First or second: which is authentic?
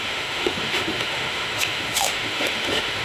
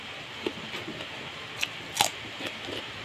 second